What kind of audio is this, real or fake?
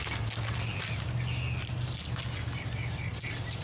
real